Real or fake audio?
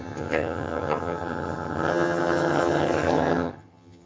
fake